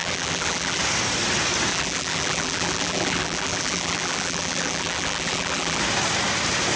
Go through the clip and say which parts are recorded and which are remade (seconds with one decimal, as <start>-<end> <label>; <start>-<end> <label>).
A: 0.0-0.8 remade; 0.8-1.7 recorded; 1.7-5.8 remade; 5.8-6.8 recorded